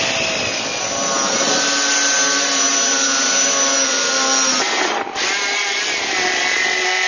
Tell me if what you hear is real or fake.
real